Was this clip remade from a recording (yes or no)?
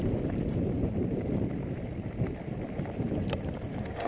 yes